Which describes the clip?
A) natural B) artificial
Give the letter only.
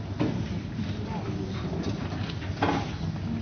A